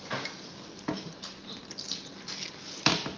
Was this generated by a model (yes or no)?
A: no